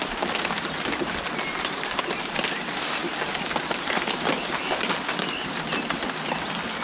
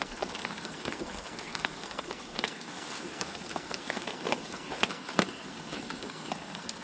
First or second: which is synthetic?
second